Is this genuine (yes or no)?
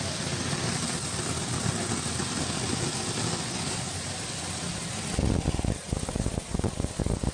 yes